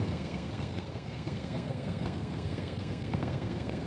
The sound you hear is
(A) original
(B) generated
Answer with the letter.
B